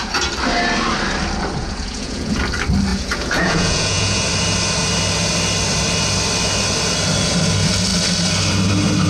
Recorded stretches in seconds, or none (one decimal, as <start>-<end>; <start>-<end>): 0.0-1.6; 2.4-2.9; 4.2-9.1